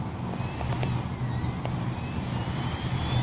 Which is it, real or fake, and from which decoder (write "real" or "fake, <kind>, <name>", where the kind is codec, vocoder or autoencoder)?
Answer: real